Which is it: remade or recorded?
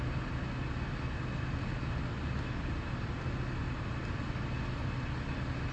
recorded